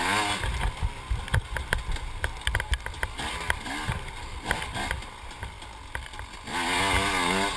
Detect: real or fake real